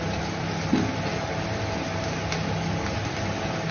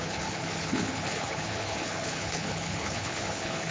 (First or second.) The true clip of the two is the first